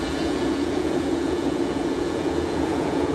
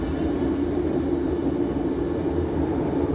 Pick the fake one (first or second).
first